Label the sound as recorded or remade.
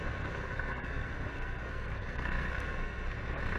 remade